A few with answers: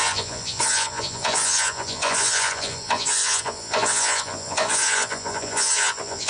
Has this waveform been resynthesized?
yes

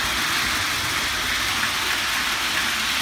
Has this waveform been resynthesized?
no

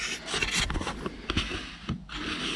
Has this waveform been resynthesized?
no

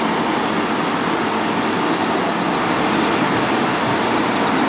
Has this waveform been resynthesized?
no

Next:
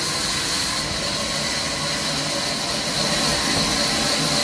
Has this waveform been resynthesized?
no